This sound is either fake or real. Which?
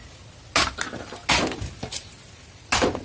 real